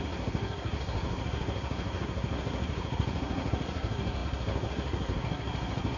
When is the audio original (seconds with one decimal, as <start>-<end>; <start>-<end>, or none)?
none